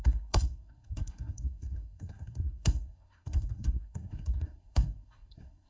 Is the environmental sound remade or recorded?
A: remade